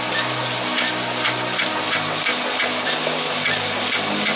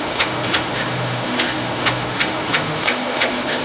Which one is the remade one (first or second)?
second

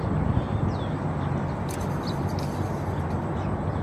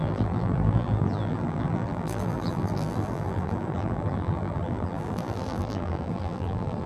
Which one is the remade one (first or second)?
second